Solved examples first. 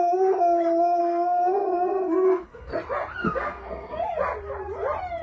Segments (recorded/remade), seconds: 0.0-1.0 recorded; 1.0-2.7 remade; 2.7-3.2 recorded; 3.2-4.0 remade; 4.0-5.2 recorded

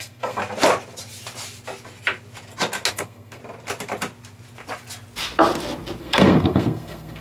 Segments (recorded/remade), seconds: 0.0-0.4 remade; 0.4-2.9 recorded; 2.9-3.4 remade; 3.4-6.0 recorded; 6.0-7.2 remade